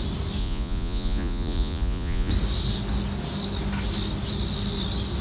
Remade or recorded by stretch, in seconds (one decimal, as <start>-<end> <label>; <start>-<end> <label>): 0.0-0.4 recorded; 0.4-2.3 remade; 2.3-5.2 recorded